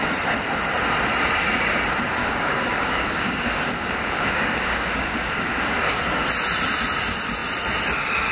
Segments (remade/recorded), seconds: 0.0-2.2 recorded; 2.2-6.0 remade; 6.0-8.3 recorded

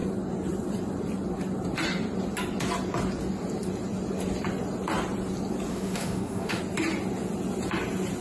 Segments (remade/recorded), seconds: 0.0-5.7 recorded; 5.7-6.6 remade; 6.6-8.2 recorded

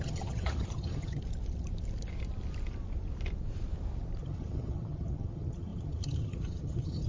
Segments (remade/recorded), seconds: 0.0-1.2 remade; 1.2-4.2 recorded; 4.2-7.1 remade

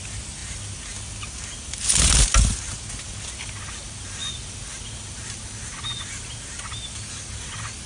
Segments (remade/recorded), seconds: 0.0-7.9 recorded

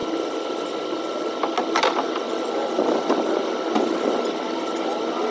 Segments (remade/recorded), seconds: 0.0-5.3 recorded